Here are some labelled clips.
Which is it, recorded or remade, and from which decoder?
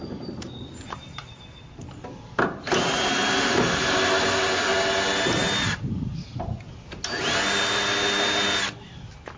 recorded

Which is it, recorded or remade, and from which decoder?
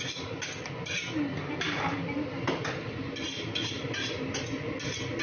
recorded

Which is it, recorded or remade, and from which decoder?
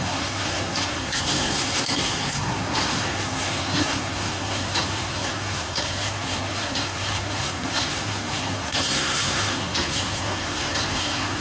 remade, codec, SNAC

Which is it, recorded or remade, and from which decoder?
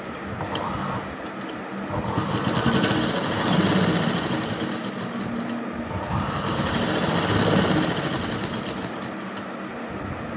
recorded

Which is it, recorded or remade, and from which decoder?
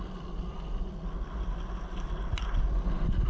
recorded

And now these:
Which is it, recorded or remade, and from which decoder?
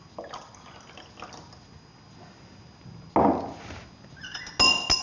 recorded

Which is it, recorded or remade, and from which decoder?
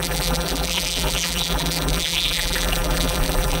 remade, vocoder, BigVGAN v2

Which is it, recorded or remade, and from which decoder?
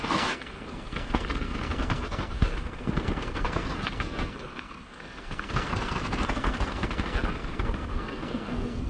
remade, codec, SNAC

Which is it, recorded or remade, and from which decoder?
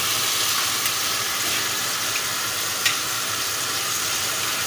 recorded